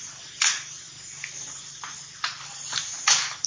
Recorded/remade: recorded